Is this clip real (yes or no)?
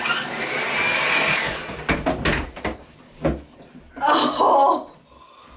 yes